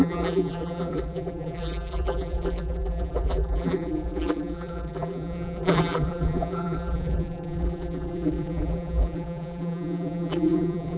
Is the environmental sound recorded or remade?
remade